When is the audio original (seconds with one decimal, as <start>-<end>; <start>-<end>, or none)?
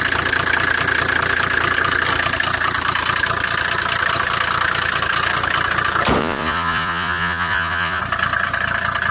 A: 0.0-6.2; 8.0-9.1